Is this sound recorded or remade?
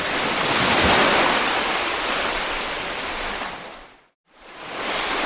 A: recorded